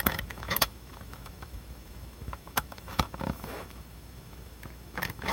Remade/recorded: remade